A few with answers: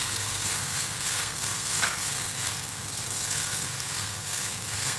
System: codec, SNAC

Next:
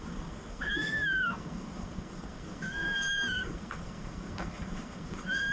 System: codec, SNAC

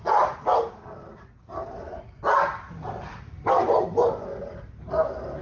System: none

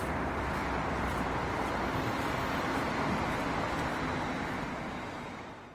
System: none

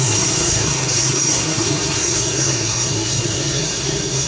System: codec, SNAC